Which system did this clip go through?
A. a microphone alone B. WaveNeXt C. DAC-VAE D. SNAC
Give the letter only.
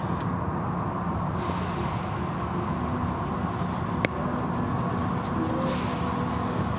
A